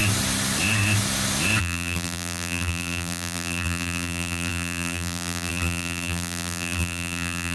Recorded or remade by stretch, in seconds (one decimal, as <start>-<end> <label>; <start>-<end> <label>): 0.0-1.6 recorded; 1.6-7.5 remade